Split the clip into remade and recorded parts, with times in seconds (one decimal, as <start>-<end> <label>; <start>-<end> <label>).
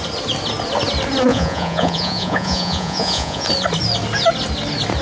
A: 0.0-1.3 recorded; 1.3-3.5 remade; 3.5-5.0 recorded